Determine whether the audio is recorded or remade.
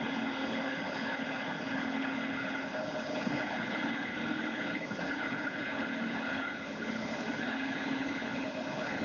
remade